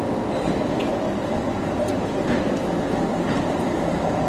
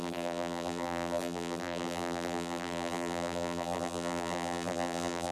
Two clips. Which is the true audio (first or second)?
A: first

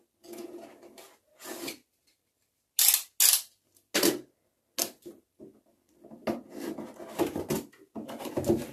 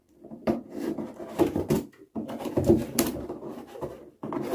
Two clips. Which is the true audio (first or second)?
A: first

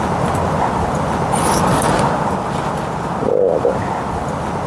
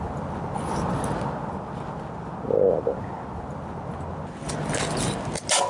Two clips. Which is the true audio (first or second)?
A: second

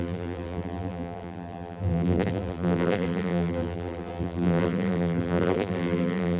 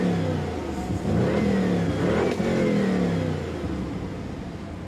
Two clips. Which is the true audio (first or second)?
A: second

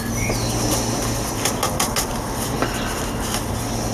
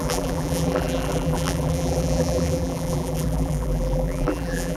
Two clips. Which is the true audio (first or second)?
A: first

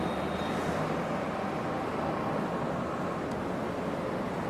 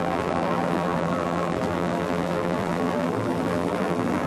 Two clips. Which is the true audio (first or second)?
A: first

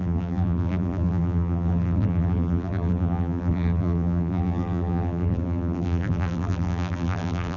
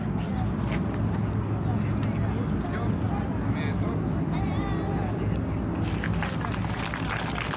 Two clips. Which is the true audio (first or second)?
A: second